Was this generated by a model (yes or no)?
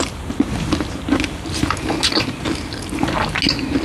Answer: no